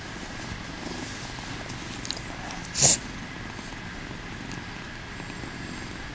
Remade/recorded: recorded